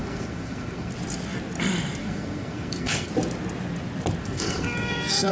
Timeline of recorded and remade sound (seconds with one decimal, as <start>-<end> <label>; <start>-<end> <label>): 0.0-0.9 remade; 0.9-2.0 recorded; 2.0-3.1 remade; 3.1-4.2 recorded; 4.2-5.3 remade